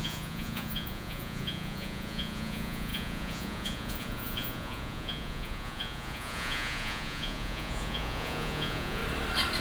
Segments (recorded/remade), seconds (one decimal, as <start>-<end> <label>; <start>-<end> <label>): 0.0-9.0 remade; 9.0-9.6 recorded